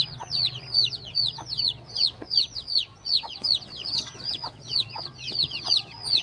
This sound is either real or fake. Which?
fake